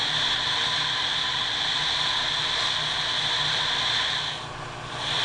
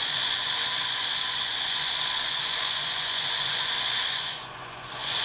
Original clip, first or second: first